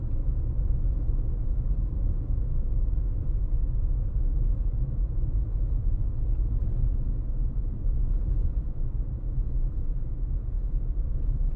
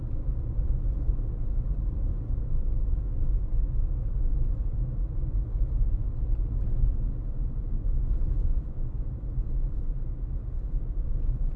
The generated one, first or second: first